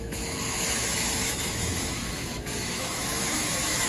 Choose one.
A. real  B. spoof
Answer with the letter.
B